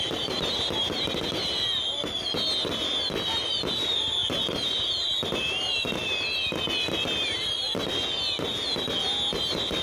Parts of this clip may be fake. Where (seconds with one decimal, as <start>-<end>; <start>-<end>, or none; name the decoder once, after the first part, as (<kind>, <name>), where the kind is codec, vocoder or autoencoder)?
none